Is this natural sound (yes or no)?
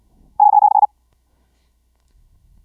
no